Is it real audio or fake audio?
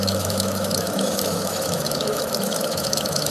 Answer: fake